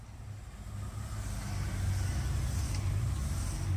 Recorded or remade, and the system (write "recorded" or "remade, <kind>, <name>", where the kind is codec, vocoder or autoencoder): recorded